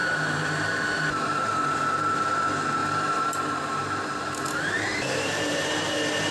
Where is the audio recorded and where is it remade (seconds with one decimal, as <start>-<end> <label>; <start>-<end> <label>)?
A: 0.0-2.2 remade; 2.2-2.8 recorded; 2.8-5.7 remade; 5.7-6.3 recorded